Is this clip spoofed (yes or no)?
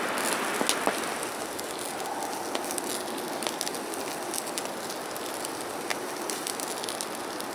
no